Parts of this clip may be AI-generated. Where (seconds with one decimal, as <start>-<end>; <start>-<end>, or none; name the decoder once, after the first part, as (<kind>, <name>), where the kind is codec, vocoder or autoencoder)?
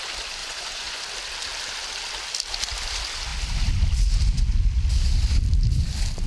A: 0.4-1.0 (vocoder, Vocos)